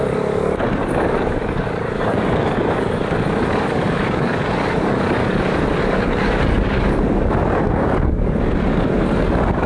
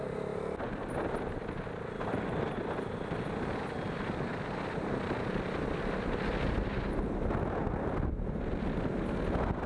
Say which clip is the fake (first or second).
first